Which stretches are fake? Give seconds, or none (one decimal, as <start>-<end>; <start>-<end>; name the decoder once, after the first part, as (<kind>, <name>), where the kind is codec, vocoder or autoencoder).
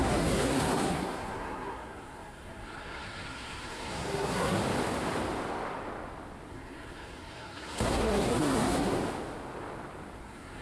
0.0-4.6 (codec, SNAC); 6.5-9.0; 10.2-10.6